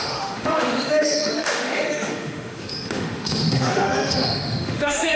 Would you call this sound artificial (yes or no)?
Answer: yes